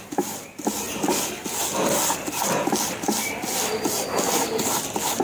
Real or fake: real